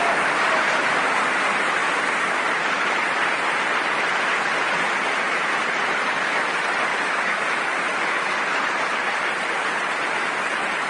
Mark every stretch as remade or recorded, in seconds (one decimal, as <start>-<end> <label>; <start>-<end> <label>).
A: 0.0-6.9 recorded; 6.9-7.4 remade; 7.4-10.9 recorded